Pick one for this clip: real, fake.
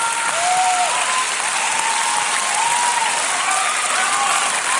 real